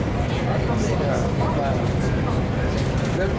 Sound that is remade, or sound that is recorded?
recorded